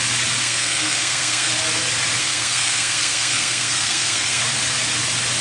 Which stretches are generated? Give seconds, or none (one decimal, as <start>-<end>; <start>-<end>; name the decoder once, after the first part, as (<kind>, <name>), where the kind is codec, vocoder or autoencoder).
0.4-1.5 (codec, SNAC); 2.2-4.4